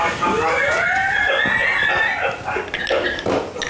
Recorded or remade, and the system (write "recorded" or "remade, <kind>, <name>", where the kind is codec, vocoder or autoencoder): recorded